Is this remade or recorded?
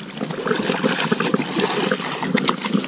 recorded